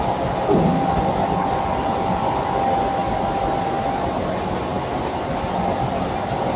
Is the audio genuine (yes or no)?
yes